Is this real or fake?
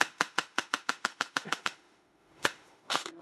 fake